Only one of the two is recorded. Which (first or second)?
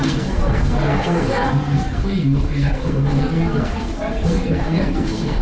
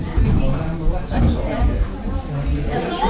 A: second